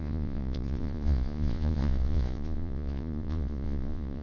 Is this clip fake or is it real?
fake